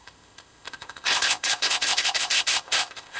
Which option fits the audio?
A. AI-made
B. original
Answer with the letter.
A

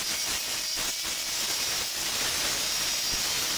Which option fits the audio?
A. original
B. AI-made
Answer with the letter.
A